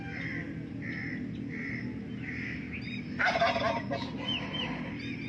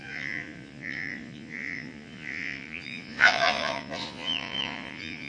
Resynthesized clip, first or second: second